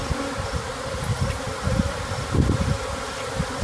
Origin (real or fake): real